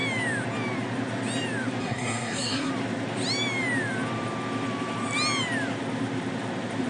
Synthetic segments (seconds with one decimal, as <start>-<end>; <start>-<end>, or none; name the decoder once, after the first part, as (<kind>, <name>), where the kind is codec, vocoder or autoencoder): 1.8-2.7 (codec, SNAC)